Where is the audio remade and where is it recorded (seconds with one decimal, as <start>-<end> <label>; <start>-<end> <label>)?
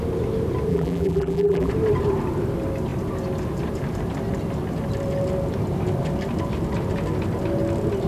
0.0-0.7 recorded; 0.7-1.7 remade; 1.7-8.1 recorded